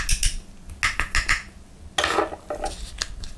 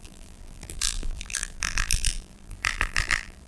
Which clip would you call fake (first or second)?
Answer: second